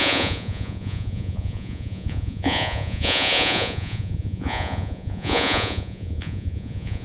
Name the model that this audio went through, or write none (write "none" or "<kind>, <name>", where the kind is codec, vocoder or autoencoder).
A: vocoder, Vocos